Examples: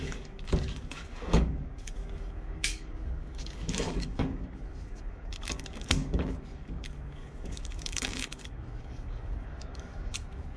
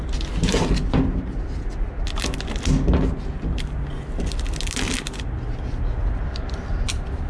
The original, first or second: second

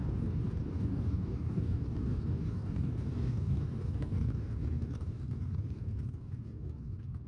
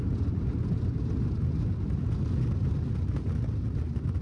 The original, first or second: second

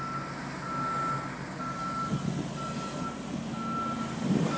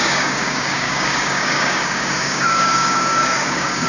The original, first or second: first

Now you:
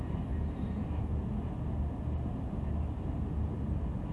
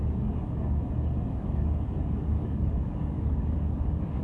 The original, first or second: first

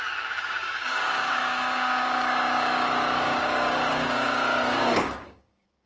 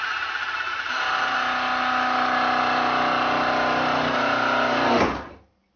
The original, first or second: second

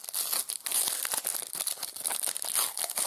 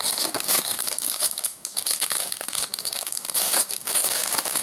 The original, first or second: first